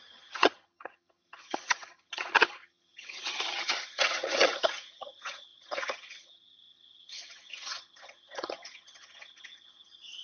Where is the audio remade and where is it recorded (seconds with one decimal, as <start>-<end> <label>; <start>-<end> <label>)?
0.0-10.2 remade